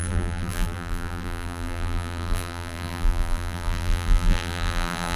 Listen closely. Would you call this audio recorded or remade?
remade